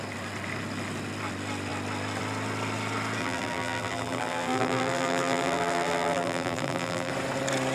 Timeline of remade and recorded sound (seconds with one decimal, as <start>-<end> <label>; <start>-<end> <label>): 0.0-3.2 recorded; 3.2-7.1 remade; 7.1-7.7 recorded